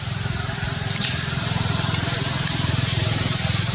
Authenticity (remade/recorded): remade